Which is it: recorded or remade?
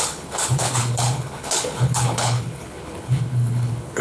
remade